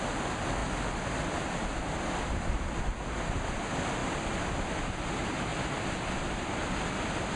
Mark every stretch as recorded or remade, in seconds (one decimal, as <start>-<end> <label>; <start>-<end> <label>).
0.0-7.4 recorded